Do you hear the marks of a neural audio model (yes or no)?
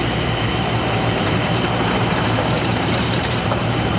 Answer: yes